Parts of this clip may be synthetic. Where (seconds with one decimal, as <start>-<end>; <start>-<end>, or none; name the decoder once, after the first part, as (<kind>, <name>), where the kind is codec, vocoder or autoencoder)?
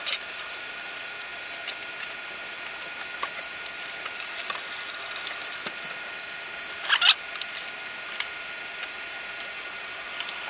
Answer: none